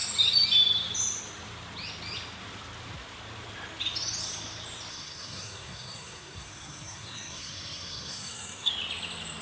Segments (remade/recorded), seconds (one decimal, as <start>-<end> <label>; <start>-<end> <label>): 0.0-4.9 recorded; 4.9-8.7 remade; 8.7-9.4 recorded